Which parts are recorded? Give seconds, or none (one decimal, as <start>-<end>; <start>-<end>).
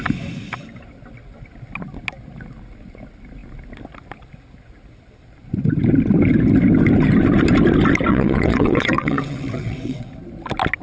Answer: 0.0-8.1; 10.1-10.8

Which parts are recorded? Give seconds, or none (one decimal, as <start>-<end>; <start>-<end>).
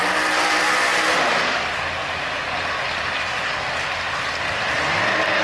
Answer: 0.0-5.4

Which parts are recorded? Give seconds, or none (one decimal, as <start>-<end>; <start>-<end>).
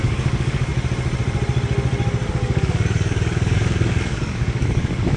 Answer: 0.7-2.3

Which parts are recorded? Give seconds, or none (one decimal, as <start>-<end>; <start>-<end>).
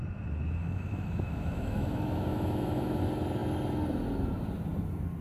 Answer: 0.0-0.6; 3.0-5.2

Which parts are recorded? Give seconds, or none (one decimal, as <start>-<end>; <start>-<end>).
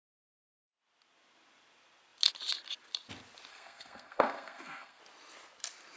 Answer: 0.0-3.5; 5.0-6.0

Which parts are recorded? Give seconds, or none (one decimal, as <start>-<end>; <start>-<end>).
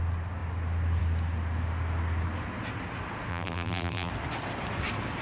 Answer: 0.0-3.3; 4.1-5.2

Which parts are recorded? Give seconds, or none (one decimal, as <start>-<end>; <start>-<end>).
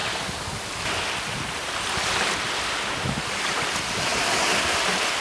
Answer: 0.0-5.2